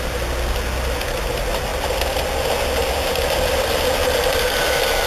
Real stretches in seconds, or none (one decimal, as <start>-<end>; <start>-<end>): 0.0-5.1